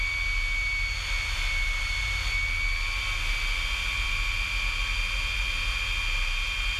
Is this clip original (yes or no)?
yes